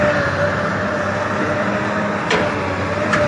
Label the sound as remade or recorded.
recorded